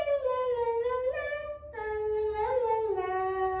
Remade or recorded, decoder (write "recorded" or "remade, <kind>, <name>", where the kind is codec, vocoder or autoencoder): recorded